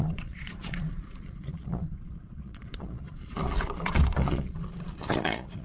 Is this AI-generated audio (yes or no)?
yes